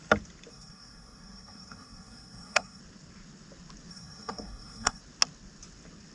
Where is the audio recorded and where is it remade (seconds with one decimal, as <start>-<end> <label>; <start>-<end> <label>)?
0.0-0.5 recorded; 0.5-2.8 remade; 2.8-3.9 recorded; 3.9-5.0 remade; 5.0-6.1 recorded